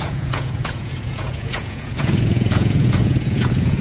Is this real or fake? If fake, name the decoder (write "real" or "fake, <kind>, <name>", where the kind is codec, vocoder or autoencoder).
fake, vocoder, Vocos